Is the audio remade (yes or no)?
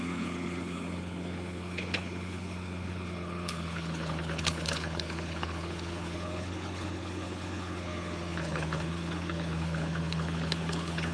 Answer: yes